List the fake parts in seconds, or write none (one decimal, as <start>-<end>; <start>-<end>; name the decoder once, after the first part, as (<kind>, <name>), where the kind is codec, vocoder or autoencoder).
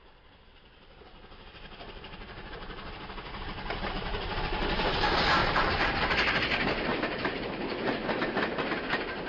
5.4-6.0 (vocoder, BigVGAN v2); 6.9-8.3